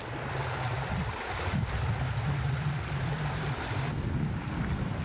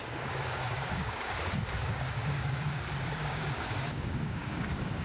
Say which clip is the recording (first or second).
first